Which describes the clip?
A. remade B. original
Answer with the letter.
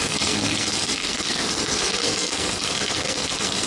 A